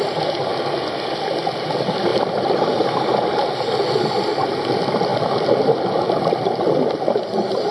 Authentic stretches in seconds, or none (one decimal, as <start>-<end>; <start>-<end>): 0.0-7.7